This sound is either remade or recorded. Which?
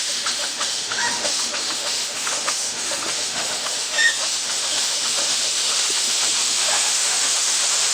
remade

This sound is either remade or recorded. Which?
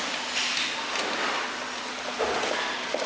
recorded